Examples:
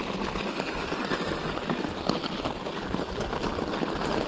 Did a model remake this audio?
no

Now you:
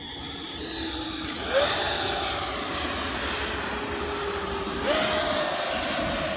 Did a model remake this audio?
no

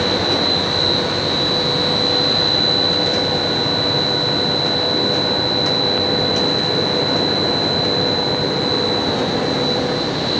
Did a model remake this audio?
no